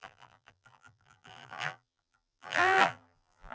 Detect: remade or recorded remade